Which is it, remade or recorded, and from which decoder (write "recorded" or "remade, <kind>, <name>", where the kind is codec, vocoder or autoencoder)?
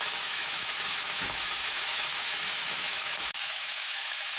remade, autoencoder, DAC-VAE